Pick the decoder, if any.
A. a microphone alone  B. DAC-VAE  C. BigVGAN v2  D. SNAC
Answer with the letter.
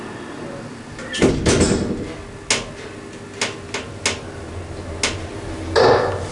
A